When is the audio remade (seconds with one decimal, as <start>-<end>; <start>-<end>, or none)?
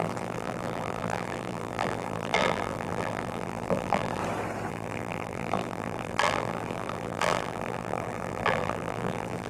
0.0-4.2; 4.7-9.5